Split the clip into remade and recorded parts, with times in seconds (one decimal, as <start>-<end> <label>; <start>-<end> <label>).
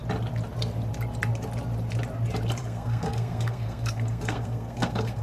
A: 0.0-2.6 recorded; 2.6-5.2 remade